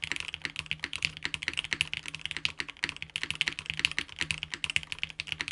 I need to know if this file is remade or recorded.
recorded